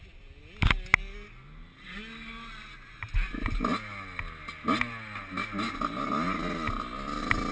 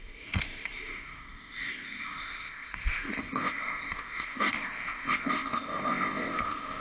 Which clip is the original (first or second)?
first